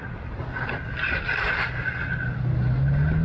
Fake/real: real